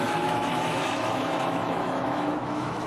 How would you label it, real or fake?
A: fake